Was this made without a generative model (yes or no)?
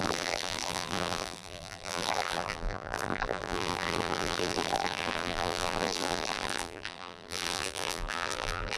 no